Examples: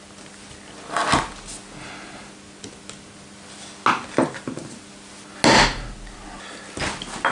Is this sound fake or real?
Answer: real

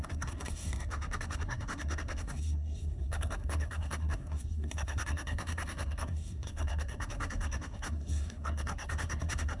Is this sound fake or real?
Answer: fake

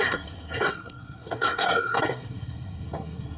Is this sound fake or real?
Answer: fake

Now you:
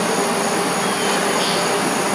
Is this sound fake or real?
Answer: real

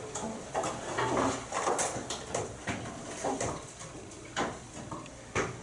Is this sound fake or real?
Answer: real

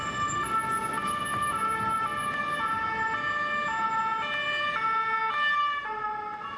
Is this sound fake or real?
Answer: real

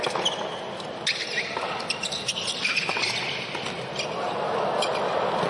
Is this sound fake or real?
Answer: real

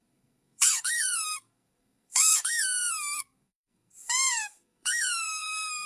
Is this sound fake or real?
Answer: fake